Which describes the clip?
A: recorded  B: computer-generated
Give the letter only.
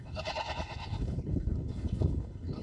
B